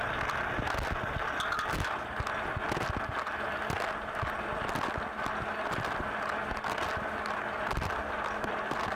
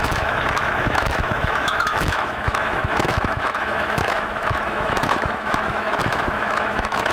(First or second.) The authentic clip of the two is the first